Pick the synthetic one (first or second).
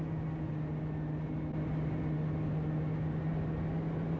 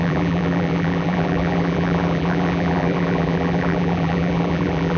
second